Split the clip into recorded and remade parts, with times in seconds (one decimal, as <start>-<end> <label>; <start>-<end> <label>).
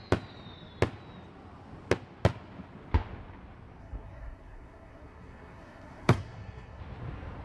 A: 0.0-3.8 recorded; 3.8-6.8 remade; 6.8-7.4 recorded